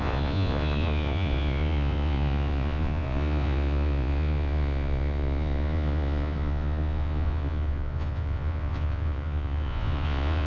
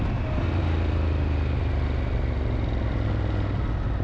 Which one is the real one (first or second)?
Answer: second